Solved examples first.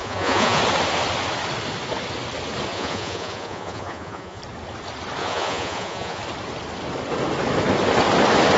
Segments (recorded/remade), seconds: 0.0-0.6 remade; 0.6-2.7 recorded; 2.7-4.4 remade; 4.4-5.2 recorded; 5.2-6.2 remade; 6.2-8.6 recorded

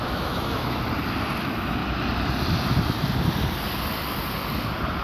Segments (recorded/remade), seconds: 0.0-0.8 remade; 0.8-1.4 recorded; 1.4-1.8 remade; 1.8-5.0 recorded